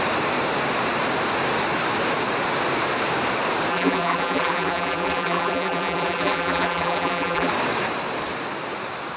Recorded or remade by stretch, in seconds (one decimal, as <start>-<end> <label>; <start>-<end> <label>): 0.0-3.7 recorded; 3.7-7.5 remade; 7.5-9.2 recorded